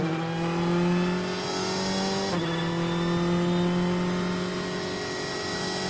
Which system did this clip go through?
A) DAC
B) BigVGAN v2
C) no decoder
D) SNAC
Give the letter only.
C